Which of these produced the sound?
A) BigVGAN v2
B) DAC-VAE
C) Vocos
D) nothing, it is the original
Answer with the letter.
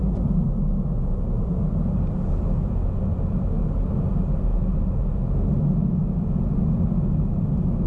D